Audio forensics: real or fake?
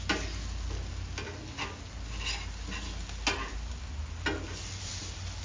real